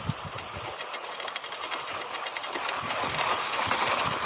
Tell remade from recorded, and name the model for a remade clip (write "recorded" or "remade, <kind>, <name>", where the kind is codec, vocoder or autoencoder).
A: recorded